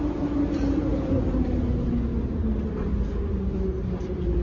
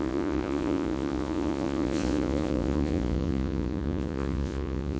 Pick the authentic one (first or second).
first